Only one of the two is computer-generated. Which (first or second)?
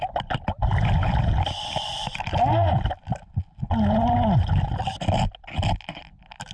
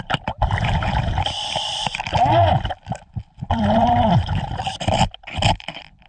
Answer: second